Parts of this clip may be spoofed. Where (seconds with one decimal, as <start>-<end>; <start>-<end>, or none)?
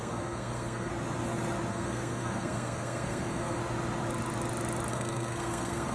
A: 0.0-0.9; 1.7-3.6; 4.9-5.9